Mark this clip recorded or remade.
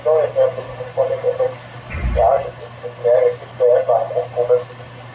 recorded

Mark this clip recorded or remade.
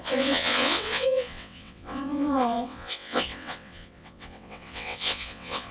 remade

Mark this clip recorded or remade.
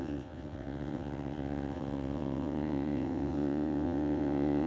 remade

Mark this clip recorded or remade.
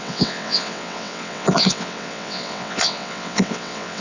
remade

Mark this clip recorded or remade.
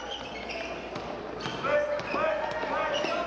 recorded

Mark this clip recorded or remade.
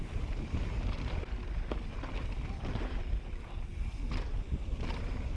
recorded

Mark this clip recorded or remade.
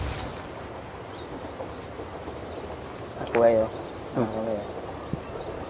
recorded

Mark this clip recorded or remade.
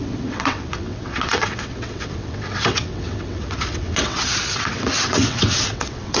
remade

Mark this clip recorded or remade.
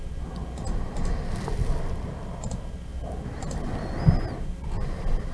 recorded